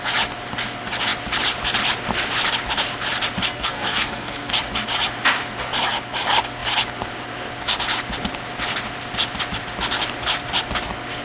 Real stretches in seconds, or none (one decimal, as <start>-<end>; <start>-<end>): 0.0-3.4; 4.5-11.2

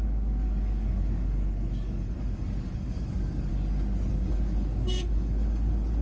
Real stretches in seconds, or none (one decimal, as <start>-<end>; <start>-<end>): 3.5-4.1

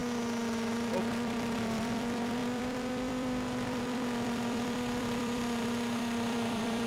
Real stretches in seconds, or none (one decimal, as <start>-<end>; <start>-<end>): 0.0-0.9

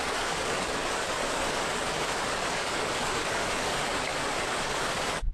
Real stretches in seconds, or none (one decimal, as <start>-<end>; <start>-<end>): none